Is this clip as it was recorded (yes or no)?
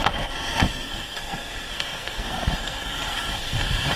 no